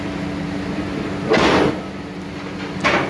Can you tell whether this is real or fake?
real